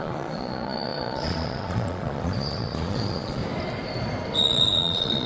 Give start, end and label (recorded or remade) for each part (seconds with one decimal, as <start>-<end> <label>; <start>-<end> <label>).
0.0-3.4 remade; 3.4-4.4 recorded; 4.4-5.3 remade

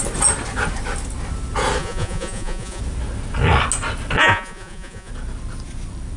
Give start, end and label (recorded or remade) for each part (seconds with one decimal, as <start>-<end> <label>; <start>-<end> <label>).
0.0-1.8 recorded; 1.8-2.8 remade; 2.8-4.2 recorded; 4.2-5.1 remade; 5.1-6.2 recorded

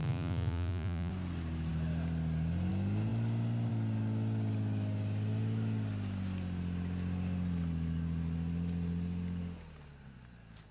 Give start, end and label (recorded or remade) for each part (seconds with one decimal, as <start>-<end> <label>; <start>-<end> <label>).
0.0-1.1 remade; 1.1-10.7 recorded

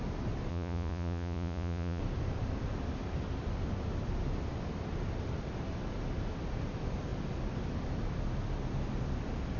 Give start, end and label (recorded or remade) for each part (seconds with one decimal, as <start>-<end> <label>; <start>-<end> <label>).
0.0-0.5 recorded; 0.5-2.0 remade; 2.0-9.6 recorded